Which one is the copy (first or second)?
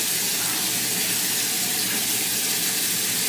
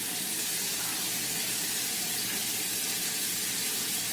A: second